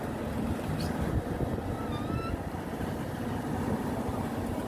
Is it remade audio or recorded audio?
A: recorded